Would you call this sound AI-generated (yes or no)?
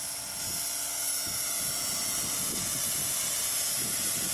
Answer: no